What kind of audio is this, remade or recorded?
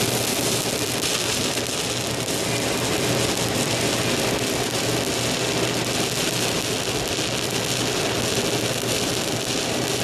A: recorded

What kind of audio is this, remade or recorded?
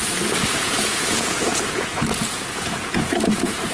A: remade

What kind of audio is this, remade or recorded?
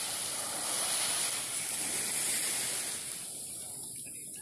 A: recorded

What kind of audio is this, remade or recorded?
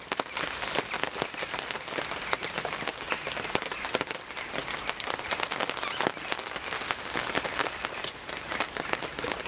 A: recorded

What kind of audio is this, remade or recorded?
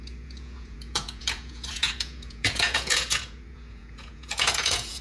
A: remade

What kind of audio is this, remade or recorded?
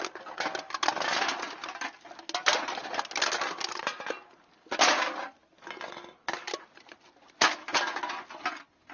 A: recorded